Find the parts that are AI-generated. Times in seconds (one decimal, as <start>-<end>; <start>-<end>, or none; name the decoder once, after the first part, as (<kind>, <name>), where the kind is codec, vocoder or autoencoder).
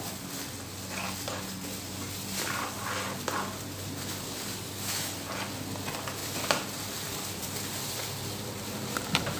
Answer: 6.2-9.4 (vocoder, BigVGAN v2)